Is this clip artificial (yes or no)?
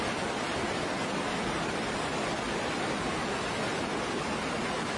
no